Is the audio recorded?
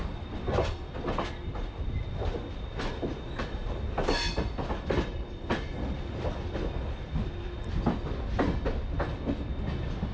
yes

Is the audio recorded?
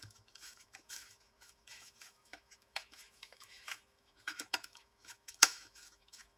no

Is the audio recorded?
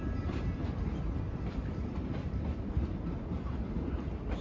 no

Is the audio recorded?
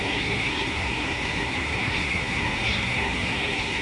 no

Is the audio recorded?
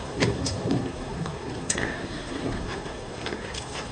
no